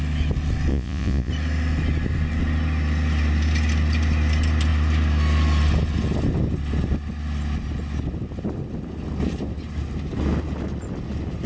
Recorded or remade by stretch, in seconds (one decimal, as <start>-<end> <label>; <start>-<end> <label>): 0.0-0.7 recorded; 0.7-1.3 remade; 1.3-11.5 recorded